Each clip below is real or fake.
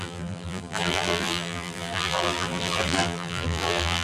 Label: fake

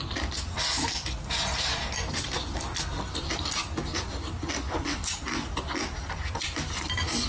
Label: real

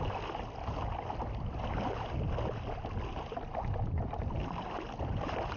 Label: real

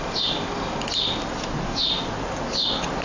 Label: real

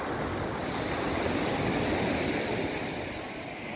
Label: real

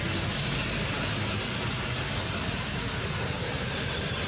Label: real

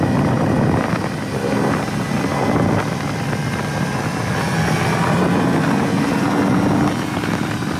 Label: real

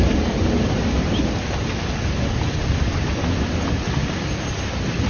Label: real